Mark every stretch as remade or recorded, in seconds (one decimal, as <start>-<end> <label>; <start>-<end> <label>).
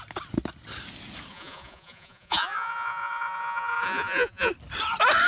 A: 0.0-1.3 recorded; 1.3-4.5 remade; 4.5-5.3 recorded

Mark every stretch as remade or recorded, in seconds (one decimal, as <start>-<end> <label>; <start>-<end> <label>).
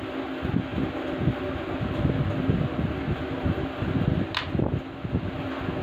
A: 0.0-5.8 recorded